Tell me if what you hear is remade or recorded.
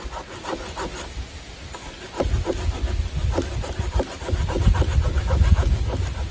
recorded